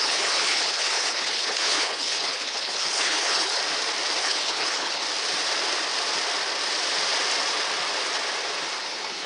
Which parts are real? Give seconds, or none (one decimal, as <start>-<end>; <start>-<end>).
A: 3.6-4.2; 5.0-8.8

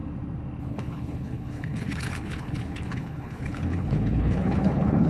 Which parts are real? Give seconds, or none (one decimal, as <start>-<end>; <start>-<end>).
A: 0.0-0.6

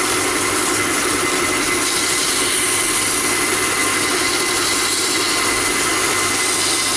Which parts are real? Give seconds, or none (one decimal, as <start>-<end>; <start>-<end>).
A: 0.0-7.0

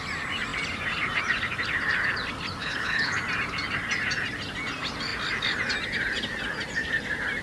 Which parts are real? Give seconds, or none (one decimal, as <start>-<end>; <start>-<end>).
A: 0.0-2.6; 3.2-7.4